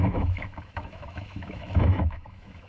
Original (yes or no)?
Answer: no